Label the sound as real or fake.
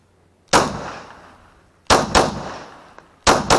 real